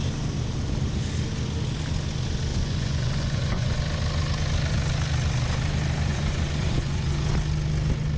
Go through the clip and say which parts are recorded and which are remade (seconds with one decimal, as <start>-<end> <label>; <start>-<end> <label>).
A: 0.0-2.5 recorded; 2.5-3.8 remade; 3.8-6.1 recorded; 6.1-7.3 remade; 7.3-8.2 recorded